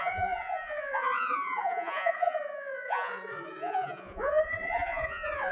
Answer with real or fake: fake